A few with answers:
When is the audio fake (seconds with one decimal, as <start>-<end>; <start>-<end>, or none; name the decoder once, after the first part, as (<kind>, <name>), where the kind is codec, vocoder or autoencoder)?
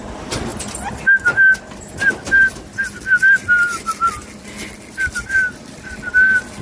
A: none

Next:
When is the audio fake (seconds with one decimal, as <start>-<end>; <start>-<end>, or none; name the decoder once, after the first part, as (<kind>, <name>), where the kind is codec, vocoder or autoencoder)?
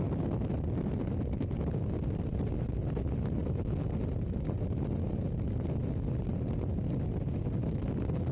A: none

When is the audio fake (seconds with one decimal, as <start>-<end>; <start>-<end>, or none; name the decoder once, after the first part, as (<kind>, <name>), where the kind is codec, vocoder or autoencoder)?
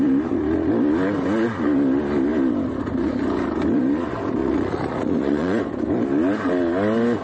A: 4.4-5.6 (vocoder, Vocos)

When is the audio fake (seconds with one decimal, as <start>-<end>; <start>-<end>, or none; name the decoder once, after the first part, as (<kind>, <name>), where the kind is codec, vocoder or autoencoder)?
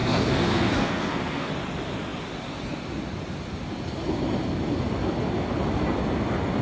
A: 0.0-1.5 (codec, SNAC)